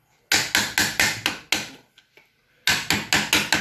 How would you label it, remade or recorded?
recorded